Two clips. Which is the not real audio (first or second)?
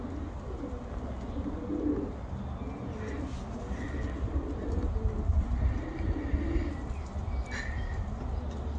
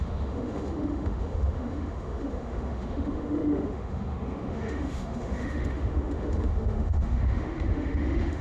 second